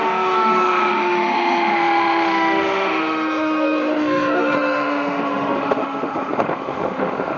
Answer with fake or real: fake